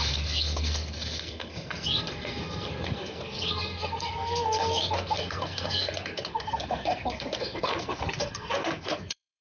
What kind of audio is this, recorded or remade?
remade